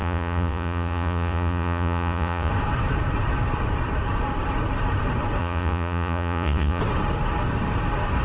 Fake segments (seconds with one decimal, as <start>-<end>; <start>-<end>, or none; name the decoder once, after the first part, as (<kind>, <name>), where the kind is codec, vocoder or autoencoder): 0.0-2.5 (vocoder, Vocos); 5.4-6.8